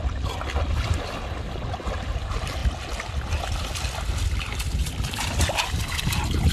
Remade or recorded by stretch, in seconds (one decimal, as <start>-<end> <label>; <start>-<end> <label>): 0.0-6.5 recorded